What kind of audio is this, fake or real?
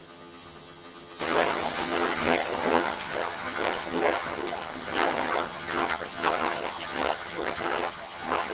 fake